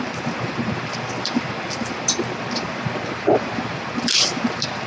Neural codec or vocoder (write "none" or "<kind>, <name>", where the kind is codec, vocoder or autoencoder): vocoder, BigVGAN v2